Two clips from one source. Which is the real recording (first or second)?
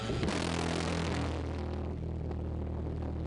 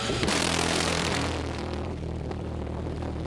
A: first